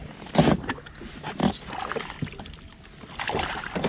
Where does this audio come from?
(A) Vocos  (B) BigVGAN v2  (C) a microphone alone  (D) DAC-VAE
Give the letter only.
C